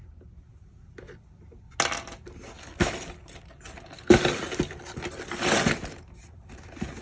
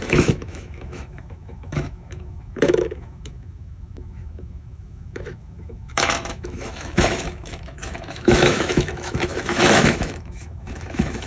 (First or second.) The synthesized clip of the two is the second